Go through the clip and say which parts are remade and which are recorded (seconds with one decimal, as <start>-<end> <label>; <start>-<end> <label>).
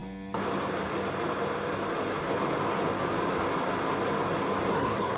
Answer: 0.0-4.7 recorded; 4.7-5.2 remade